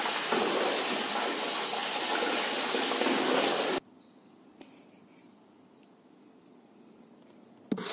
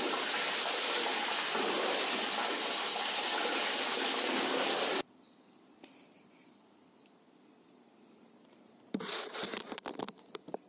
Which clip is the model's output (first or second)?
second